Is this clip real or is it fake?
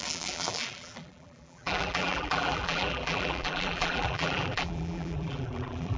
fake